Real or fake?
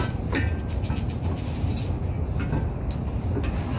real